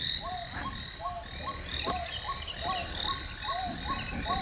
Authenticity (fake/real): real